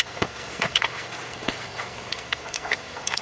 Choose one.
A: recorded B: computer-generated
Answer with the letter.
B